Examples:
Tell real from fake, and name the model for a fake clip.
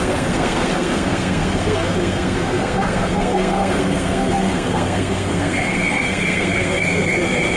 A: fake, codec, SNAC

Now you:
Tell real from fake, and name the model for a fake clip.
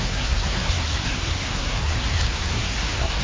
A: fake, codec, SNAC